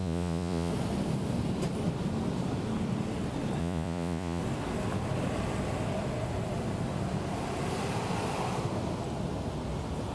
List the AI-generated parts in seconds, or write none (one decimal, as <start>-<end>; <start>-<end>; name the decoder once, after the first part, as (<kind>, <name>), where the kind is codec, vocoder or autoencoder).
0.0-0.7 (vocoder, Vocos); 3.6-4.4